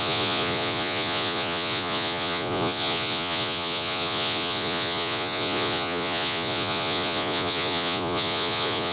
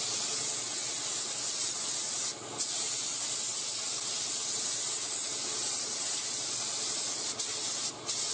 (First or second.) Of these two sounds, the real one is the second